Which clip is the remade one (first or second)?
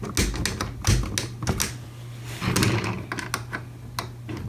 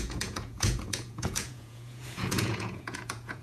second